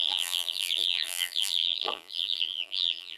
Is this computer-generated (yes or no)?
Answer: yes